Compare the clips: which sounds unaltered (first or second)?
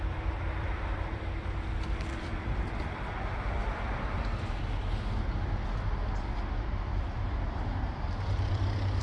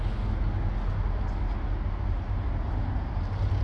second